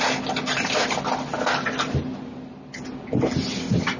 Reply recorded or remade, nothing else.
recorded